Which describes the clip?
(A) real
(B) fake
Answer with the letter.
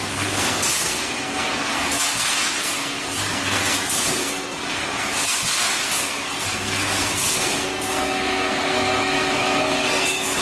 B